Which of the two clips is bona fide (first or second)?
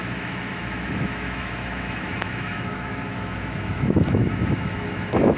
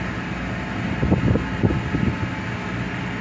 second